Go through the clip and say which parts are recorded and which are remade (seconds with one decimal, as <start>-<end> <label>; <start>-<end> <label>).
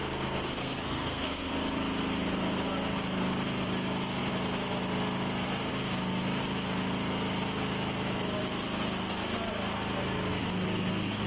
0.0-0.6 recorded; 0.6-1.5 remade; 1.5-11.3 recorded